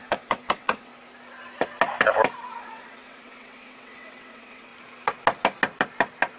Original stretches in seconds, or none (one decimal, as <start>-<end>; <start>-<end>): 0.9-2.6; 4.7-6.4